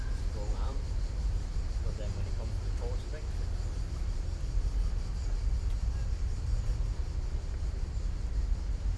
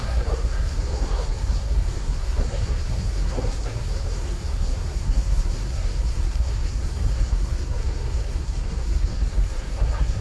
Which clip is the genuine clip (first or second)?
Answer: first